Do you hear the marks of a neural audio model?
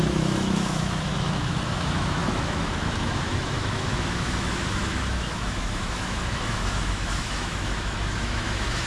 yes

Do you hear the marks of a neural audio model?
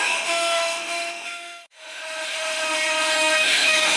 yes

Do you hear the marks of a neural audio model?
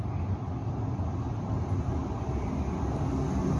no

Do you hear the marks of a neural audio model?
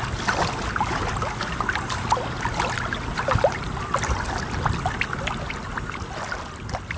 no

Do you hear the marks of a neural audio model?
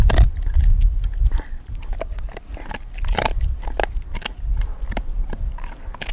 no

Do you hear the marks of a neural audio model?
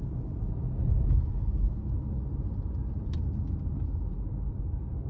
no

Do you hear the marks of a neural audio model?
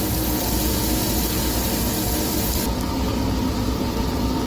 no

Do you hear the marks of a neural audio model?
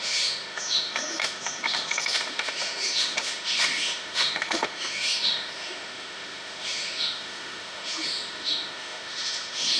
yes